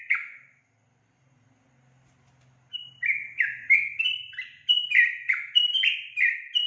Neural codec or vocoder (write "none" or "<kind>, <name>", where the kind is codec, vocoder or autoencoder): none